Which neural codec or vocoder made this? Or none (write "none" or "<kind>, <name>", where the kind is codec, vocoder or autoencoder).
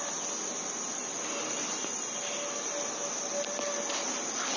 none